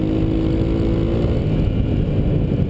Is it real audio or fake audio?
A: real